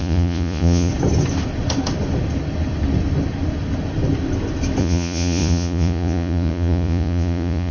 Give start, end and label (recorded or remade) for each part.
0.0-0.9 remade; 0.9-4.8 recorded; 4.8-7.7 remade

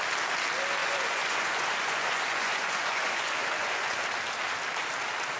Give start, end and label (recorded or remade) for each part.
0.0-0.8 recorded; 0.8-4.0 remade; 4.0-5.4 recorded

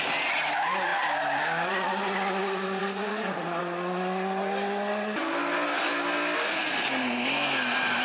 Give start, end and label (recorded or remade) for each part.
0.0-2.8 recorded; 2.8-3.6 remade; 3.6-8.0 recorded